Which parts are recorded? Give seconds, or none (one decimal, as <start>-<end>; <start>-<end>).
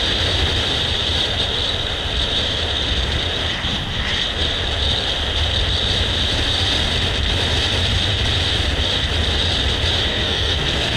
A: 0.0-10.1